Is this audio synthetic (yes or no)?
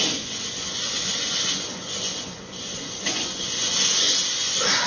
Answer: yes